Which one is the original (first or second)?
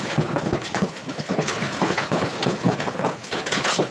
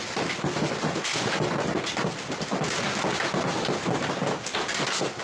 second